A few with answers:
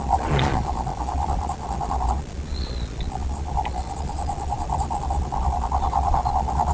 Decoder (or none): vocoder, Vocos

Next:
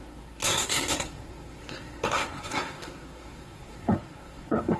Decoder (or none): codec, SNAC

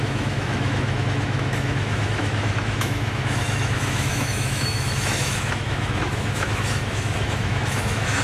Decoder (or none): autoencoder, DAC-VAE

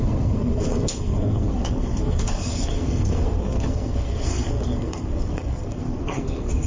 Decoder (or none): codec, SNAC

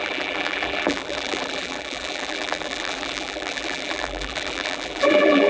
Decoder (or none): vocoder, BigVGAN v2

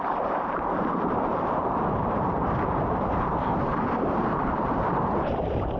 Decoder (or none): vocoder, BigVGAN v2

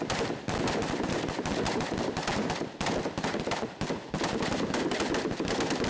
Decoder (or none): none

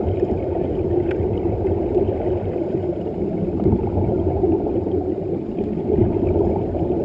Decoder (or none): vocoder, BigVGAN v2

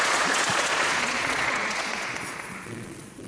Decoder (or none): vocoder, Vocos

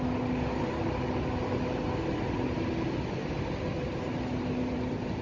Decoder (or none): none